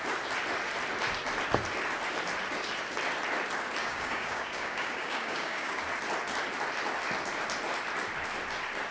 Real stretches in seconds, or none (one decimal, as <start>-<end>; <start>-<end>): 0.0-3.8; 5.8-8.9